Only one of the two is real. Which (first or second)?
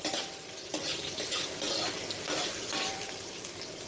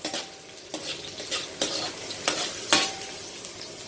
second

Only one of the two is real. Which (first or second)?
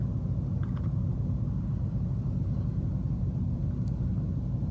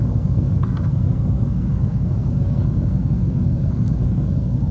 first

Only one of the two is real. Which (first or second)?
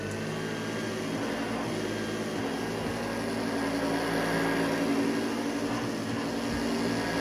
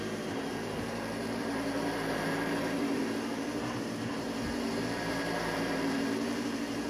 first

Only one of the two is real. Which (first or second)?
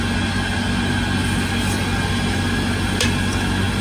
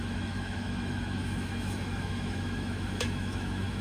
first